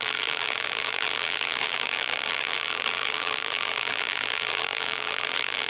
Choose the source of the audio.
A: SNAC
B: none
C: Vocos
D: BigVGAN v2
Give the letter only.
D